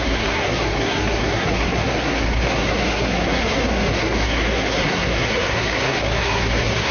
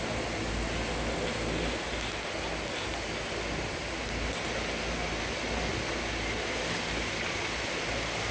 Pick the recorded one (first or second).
second